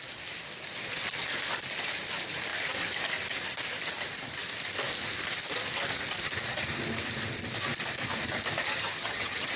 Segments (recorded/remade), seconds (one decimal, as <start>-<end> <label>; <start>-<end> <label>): 0.0-8.7 recorded; 8.7-9.6 remade